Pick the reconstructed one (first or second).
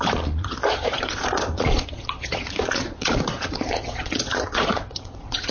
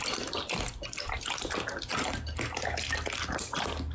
first